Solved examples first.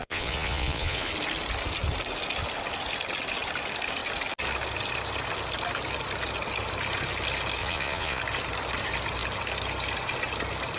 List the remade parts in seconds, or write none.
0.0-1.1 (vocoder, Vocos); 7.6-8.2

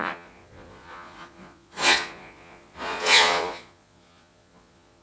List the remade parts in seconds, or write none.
0.0-5.0 (vocoder, Vocos)

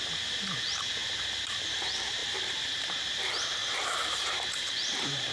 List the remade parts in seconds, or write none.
2.2-2.9 (vocoder, BigVGAN v2); 3.6-5.3

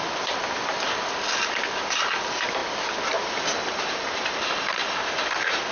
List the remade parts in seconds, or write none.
none

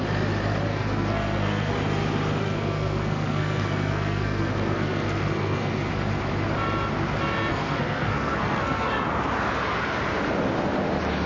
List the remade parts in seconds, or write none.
0.7-1.7 (codec, SNAC); 2.4-5.9; 7.5-8.9